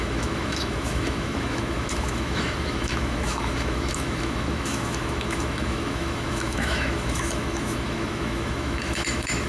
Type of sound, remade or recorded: remade